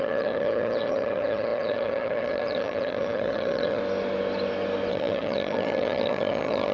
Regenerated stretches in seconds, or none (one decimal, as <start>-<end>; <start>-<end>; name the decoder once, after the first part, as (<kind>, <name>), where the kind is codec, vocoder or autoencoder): 0.0-3.8 (vocoder, HiFi-GAN); 4.9-6.7